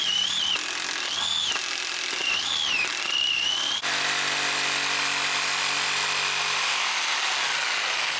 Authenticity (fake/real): real